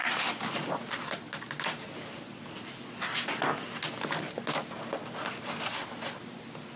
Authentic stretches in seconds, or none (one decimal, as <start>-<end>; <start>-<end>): 0.0-6.8